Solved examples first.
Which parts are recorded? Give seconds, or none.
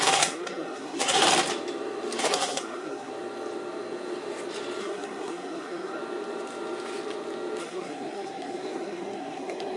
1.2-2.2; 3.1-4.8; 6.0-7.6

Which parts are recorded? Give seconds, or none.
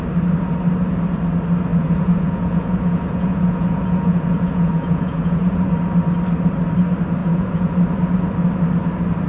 0.0-1.7; 5.7-7.2; 7.7-9.3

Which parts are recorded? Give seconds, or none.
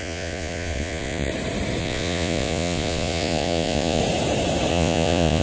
1.3-1.8; 4.0-4.7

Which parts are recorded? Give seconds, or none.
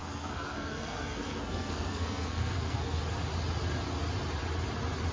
3.0-5.1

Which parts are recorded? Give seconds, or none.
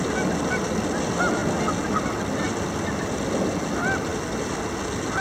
0.0-5.2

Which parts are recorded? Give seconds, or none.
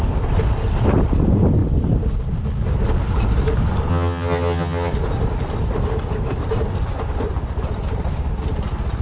0.0-3.9; 4.9-9.0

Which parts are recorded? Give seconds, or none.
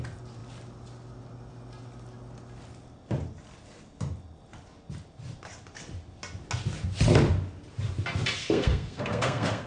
0.0-8.4